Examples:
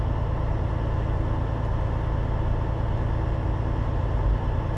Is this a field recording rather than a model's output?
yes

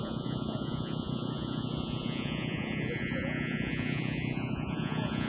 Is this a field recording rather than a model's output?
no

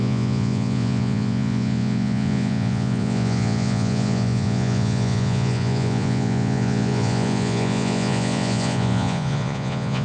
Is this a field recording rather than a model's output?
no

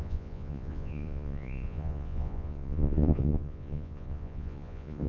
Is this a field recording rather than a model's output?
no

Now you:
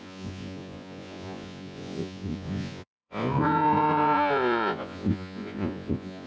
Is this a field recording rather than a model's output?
no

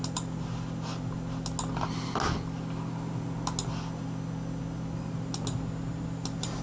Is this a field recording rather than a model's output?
yes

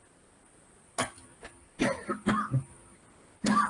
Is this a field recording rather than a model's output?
yes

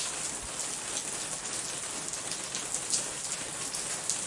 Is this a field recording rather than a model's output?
yes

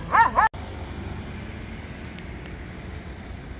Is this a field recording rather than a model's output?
yes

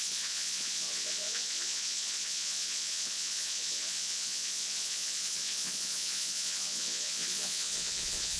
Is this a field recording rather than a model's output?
no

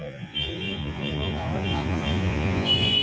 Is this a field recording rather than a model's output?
no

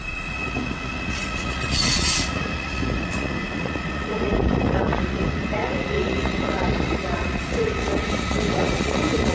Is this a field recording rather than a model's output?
no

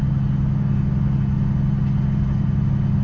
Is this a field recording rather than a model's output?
yes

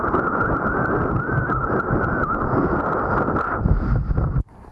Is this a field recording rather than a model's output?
yes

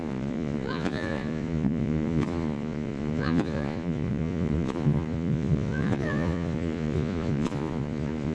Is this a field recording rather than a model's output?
no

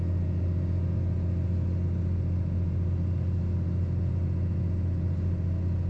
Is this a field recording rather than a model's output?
yes